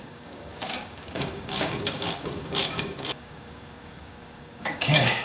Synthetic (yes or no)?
yes